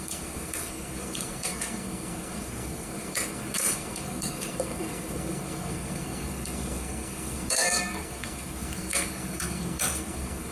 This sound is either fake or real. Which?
fake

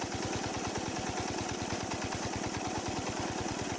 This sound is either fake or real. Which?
real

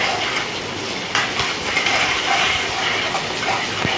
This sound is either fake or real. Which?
real